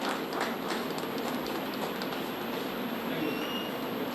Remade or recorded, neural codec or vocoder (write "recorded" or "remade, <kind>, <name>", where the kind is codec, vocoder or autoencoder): recorded